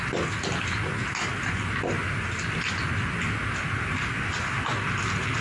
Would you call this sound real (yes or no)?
yes